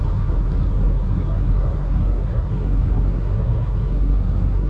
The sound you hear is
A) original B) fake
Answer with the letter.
B